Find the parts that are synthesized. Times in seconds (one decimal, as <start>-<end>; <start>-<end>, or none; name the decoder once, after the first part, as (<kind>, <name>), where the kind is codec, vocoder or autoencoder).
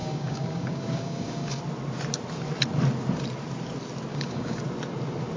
0.0-1.6 (codec, DAC); 4.1-4.6